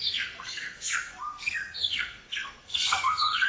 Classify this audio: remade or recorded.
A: remade